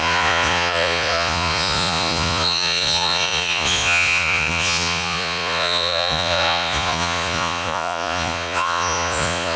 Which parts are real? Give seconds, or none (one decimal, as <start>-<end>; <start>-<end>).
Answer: none